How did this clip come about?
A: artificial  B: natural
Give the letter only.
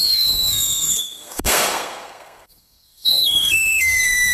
A